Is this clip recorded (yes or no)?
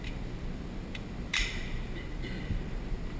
yes